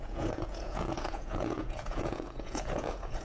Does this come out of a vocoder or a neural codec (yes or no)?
yes